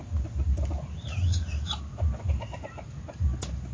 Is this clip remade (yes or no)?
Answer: no